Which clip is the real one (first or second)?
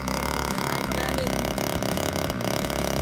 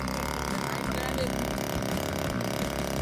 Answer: second